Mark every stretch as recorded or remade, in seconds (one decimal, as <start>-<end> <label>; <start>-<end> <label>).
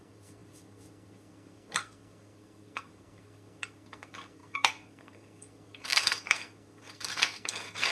0.0-7.9 remade